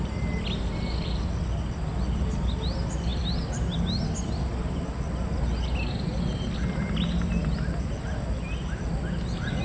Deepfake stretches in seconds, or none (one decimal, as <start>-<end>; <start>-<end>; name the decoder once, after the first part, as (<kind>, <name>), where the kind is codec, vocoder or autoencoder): none